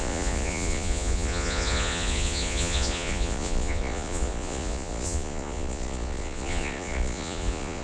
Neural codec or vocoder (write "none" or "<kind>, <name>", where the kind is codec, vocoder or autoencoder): vocoder, Vocos